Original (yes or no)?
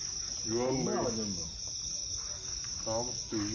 yes